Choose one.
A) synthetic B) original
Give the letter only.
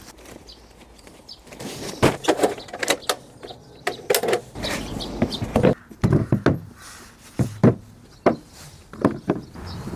B